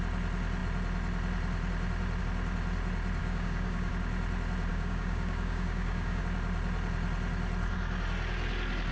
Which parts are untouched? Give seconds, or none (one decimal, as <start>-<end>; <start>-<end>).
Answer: 0.0-3.2; 3.9-4.7; 6.2-8.9